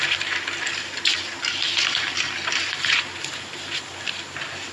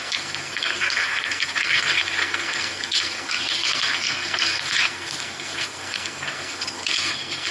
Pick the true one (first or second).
first